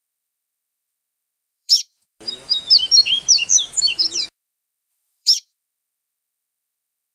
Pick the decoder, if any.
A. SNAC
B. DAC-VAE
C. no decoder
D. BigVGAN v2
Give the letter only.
B